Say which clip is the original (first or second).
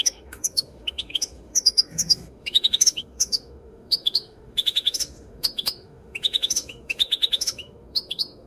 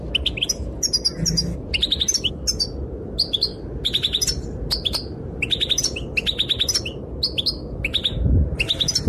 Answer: second